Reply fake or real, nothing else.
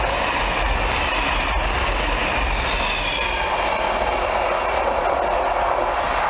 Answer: real